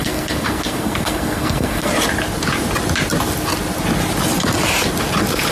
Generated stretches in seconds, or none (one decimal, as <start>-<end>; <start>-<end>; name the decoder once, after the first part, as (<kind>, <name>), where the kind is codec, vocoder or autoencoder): 0.0-1.9 (codec, SNAC)